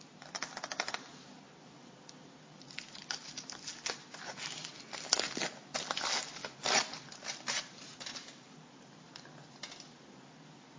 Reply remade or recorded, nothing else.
recorded